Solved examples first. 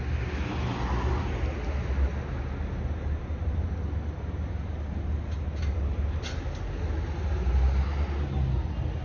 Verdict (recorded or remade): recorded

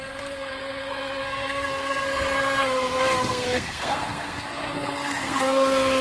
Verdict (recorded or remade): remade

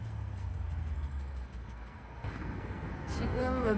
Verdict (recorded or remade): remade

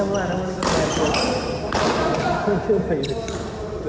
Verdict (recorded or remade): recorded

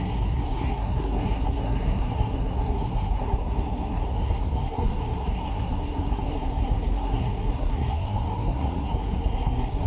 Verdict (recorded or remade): remade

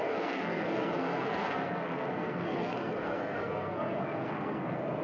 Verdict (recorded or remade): remade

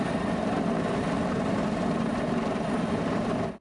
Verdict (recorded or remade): remade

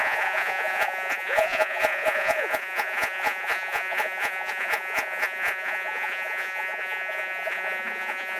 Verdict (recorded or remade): remade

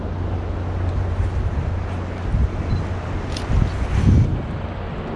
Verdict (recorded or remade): recorded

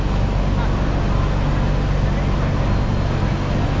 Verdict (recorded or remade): recorded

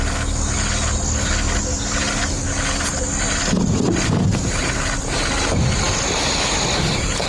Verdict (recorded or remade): recorded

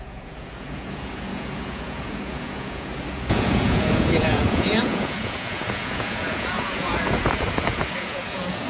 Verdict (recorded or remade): remade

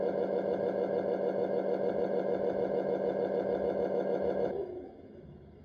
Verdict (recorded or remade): remade